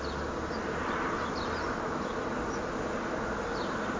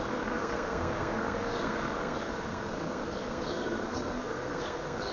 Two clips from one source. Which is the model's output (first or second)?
second